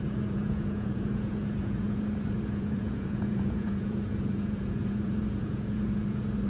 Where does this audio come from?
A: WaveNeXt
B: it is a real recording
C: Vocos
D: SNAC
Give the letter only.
C